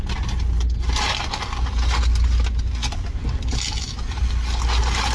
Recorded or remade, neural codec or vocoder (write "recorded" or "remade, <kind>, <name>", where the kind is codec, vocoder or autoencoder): recorded